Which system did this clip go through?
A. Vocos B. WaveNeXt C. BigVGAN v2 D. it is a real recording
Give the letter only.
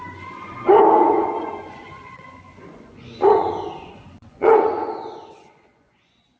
A